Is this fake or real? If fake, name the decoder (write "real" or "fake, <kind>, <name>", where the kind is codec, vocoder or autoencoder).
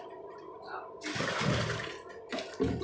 real